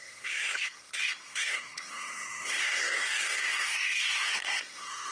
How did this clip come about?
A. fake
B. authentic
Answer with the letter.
A